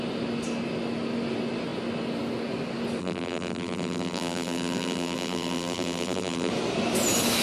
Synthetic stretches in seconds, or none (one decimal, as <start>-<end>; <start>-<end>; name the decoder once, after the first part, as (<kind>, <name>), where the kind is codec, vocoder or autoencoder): 3.0-6.5 (vocoder, BigVGAN v2)